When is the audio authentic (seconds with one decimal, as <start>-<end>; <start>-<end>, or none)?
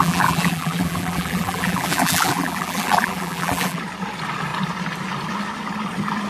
3.8-6.3